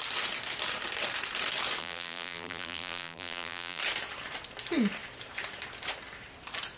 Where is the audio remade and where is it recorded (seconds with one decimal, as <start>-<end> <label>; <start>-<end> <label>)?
0.0-1.8 recorded; 1.8-3.8 remade; 3.8-6.8 recorded